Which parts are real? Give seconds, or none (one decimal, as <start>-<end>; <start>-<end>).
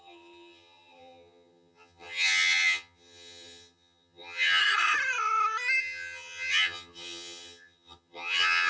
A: 4.6-5.8